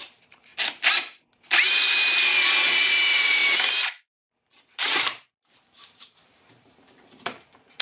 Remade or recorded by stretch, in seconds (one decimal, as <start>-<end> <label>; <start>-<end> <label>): 0.0-0.5 remade; 0.5-1.7 recorded; 1.7-3.4 remade; 3.4-4.8 recorded; 4.8-7.8 remade